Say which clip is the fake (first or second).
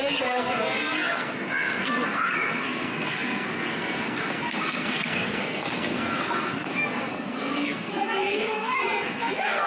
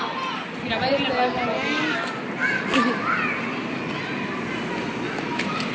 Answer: first